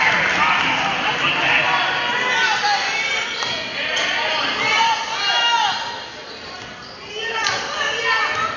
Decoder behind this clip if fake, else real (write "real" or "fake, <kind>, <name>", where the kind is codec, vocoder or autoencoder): real